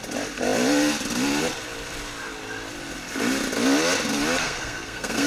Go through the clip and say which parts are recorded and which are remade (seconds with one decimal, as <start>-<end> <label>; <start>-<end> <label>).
0.0-4.4 recorded; 4.4-5.3 remade